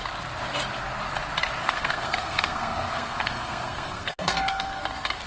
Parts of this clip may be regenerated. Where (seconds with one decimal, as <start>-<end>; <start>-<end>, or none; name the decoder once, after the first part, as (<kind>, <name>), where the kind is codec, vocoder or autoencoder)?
1.6-4.8 (codec, SNAC)